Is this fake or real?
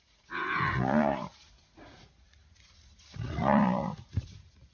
fake